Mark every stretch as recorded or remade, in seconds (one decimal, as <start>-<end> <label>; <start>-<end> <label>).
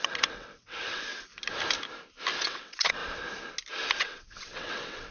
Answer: 0.0-1.1 remade; 1.1-2.4 recorded; 2.4-3.0 remade; 3.0-4.0 recorded; 4.0-5.1 remade